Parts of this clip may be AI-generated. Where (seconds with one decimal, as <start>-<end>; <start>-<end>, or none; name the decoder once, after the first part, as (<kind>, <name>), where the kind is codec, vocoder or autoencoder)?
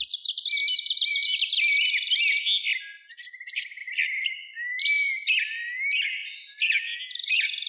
none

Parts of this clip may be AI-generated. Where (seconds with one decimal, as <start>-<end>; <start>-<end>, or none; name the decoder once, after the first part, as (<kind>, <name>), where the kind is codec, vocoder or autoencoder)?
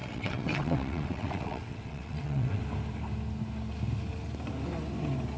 0.0-2.6 (vocoder, WaveNeXt)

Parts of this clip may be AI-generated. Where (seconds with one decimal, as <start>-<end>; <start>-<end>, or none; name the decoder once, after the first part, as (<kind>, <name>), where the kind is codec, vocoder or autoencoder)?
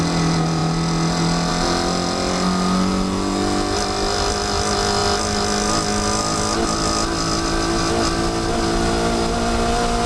none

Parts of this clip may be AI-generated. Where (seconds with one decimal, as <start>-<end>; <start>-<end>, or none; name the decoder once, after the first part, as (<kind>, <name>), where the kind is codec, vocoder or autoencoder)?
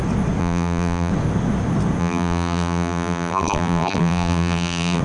0.4-1.1 (vocoder, BigVGAN v2); 2.0-5.0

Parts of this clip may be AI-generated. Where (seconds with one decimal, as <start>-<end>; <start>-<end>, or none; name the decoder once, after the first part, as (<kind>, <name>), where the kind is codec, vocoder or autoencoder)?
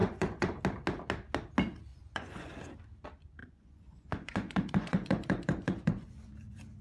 0.0-0.6 (vocoder, Vocos); 1.9-2.5; 3.4-6.8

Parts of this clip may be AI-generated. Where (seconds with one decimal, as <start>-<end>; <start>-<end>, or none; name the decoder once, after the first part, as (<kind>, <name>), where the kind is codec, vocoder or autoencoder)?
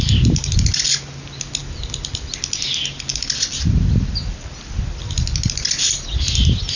none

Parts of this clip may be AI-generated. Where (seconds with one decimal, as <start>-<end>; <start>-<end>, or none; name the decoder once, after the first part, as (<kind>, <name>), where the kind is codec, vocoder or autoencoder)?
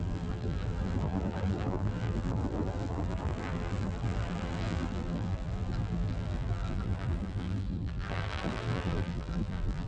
0.0-9.9 (vocoder, BigVGAN v2)